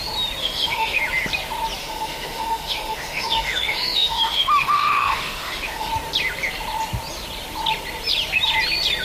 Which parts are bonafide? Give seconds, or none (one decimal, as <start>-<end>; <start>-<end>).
0.0-0.4; 1.0-1.8; 5.9-9.0